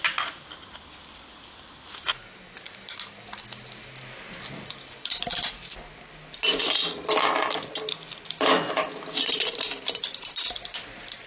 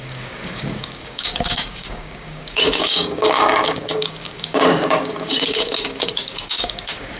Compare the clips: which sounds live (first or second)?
first